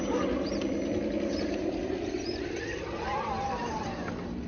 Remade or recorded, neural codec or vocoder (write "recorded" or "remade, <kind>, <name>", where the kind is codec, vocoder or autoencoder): recorded